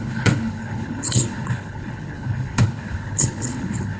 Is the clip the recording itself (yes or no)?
no